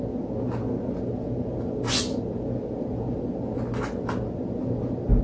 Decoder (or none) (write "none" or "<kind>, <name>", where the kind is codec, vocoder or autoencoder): none